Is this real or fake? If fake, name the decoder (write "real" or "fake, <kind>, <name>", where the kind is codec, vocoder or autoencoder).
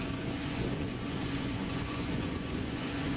fake, vocoder, Vocos